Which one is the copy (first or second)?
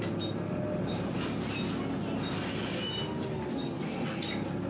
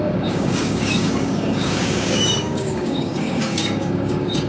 second